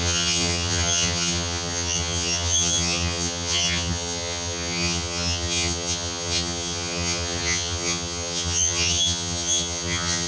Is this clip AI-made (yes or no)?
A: yes